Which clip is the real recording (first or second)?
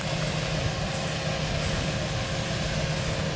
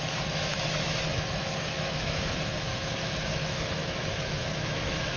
first